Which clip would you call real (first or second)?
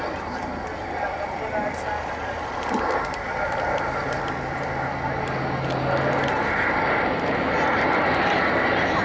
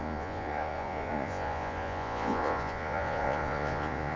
first